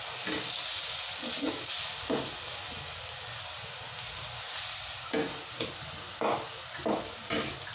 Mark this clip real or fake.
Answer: real